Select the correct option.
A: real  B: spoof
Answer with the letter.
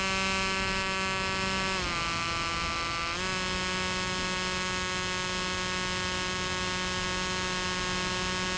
A